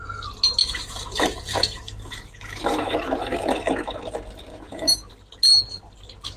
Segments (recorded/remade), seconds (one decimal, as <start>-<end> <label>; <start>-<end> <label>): 0.0-0.6 recorded; 0.6-4.0 remade; 4.0-4.5 recorded; 4.5-5.1 remade; 5.1-6.4 recorded